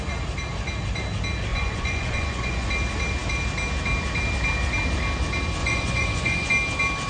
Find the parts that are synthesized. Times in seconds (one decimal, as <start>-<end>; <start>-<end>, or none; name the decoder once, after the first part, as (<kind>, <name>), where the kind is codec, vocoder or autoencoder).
1.5-2.7 (vocoder, Vocos); 5.6-6.5

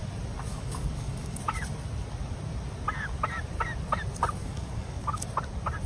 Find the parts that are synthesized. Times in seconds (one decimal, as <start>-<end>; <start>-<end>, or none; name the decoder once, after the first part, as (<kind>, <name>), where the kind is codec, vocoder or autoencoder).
0.5-1.4 (codec, DAC); 4.4-5.2

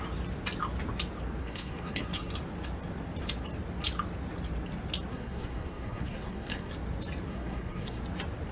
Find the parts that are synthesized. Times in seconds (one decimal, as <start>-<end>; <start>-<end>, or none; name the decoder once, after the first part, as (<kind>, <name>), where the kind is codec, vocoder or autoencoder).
1.4-2.3 (codec, SNAC); 5.1-6.7; 7.3-8.0